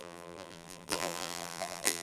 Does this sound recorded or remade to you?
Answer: remade